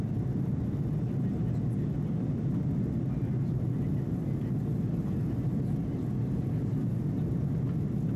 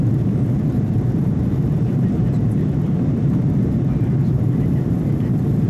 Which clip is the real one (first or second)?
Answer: first